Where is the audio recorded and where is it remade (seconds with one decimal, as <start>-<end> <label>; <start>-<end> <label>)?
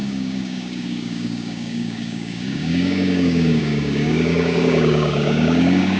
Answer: 0.0-6.0 remade